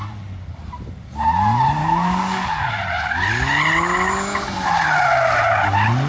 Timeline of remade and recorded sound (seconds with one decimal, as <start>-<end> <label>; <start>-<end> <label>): 0.0-1.8 recorded; 1.8-2.7 remade; 2.7-6.1 recorded